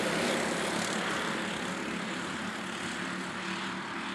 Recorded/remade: recorded